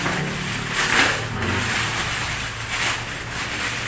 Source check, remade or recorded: recorded